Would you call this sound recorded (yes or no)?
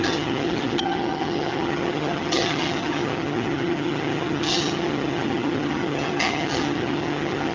no